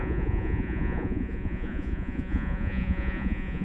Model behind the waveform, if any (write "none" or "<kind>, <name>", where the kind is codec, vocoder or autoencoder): vocoder, Vocos